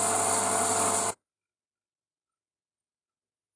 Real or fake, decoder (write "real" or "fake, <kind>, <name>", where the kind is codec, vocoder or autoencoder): real